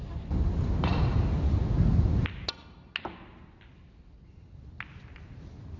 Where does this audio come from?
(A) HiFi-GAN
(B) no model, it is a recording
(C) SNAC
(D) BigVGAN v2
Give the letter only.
B